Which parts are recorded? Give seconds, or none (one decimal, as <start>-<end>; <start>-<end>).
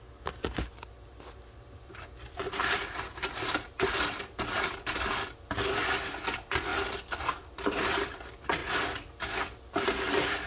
0.0-10.5